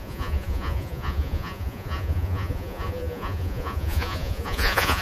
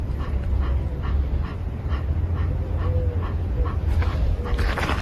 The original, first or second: second